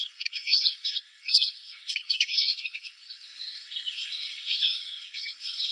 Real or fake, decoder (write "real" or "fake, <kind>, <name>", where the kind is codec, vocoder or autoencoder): fake, codec, SNAC